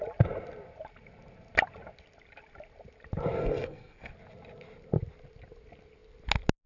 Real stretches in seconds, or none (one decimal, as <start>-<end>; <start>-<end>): 0.0-3.4; 4.1-6.7